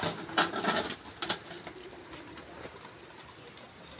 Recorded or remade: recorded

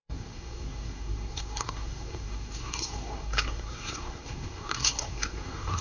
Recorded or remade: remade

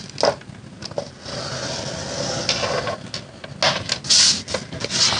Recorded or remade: recorded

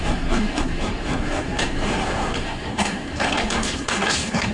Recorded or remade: remade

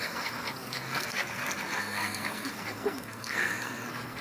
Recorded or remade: remade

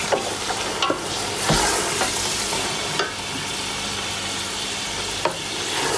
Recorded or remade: recorded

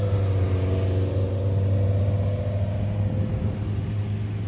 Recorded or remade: recorded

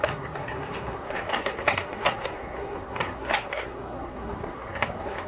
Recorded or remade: remade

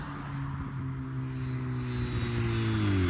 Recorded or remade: recorded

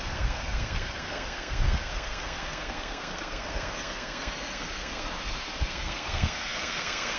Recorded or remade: remade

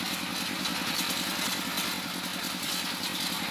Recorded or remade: recorded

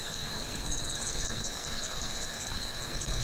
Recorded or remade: remade